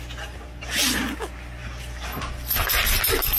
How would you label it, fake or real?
real